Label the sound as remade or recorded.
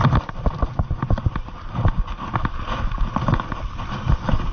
recorded